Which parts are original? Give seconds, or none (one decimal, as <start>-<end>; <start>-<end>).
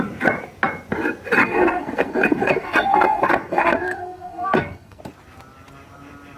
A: 0.0-1.4; 5.0-6.4